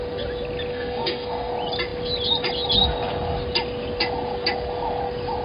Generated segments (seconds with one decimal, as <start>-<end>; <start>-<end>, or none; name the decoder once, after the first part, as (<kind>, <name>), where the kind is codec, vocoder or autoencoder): 0.7-1.5 (codec, SNAC)